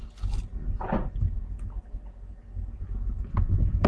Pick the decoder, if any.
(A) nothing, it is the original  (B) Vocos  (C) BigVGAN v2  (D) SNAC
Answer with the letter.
A